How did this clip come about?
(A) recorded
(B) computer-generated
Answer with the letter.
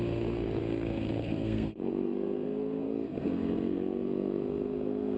B